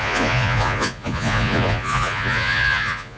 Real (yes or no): no